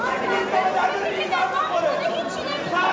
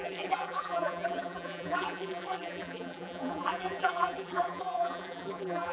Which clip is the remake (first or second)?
second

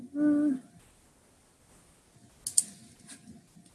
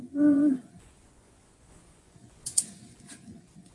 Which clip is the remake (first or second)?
second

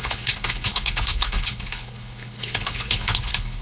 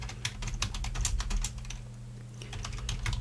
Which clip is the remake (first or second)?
first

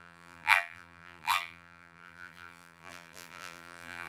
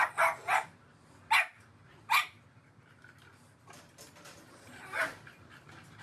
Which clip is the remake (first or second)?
first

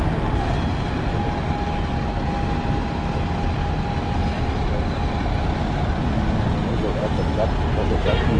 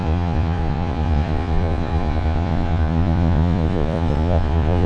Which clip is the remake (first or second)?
second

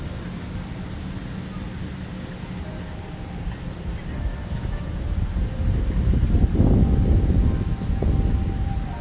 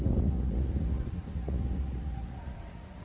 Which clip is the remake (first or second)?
second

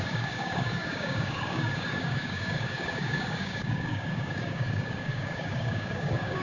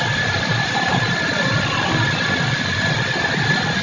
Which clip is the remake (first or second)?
first